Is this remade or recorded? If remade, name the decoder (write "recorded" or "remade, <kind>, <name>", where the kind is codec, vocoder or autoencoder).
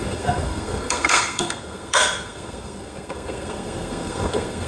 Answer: remade, codec, SNAC